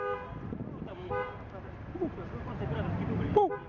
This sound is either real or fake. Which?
real